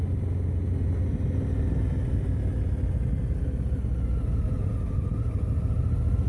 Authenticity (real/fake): real